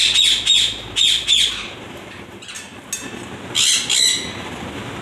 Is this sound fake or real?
real